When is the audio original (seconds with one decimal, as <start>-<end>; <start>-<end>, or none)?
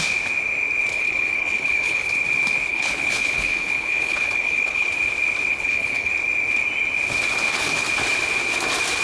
0.0-0.9; 2.1-2.7; 4.9-5.5; 6.1-9.0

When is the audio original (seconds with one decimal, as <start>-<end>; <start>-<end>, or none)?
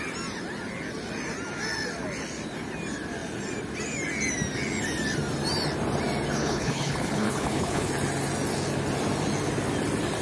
0.0-6.4; 7.9-10.2